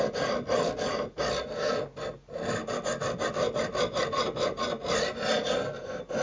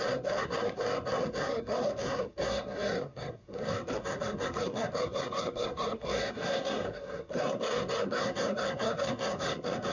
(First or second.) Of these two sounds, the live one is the first